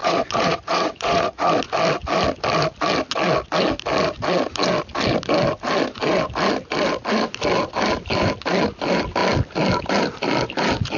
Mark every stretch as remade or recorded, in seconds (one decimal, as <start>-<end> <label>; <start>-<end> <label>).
0.0-1.5 remade; 1.5-11.0 recorded